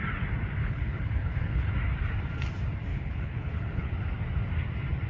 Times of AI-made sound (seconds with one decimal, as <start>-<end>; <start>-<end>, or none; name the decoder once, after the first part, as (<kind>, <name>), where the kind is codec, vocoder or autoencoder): 0.6-1.7 (codec, HILCodec); 2.9-3.9